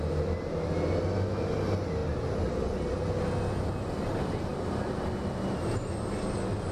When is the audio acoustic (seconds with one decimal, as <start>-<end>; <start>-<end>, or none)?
0.0-6.7